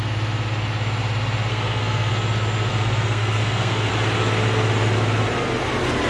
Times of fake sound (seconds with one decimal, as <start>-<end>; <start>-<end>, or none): 1.5-2.1; 2.7-3.9